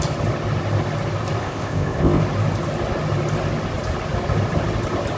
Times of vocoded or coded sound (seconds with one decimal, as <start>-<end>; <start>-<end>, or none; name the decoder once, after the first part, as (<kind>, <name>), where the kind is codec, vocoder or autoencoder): 1.4-2.2 (codec, ZipCodec)